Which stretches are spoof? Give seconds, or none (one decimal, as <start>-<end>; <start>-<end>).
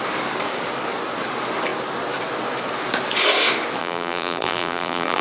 3.8-5.2